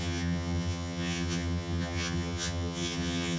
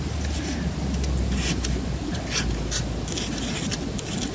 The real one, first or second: second